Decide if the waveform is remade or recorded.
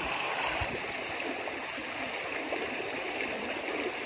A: recorded